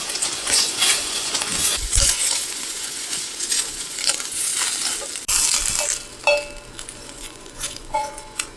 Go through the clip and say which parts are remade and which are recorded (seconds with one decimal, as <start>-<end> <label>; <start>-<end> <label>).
0.0-4.5 remade; 4.5-6.8 recorded; 6.8-8.6 remade